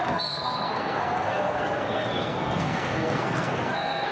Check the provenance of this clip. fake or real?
fake